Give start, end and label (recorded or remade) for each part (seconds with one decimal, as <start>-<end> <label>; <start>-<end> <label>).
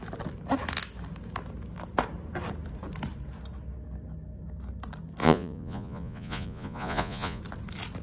0.0-5.2 recorded; 5.2-7.4 remade; 7.4-8.0 recorded